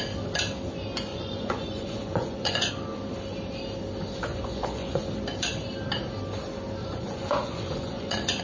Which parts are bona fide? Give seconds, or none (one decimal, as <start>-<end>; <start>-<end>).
0.0-1.1; 2.7-4.3; 5.0-6.8